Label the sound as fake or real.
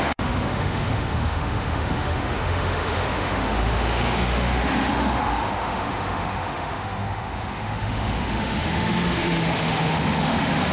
fake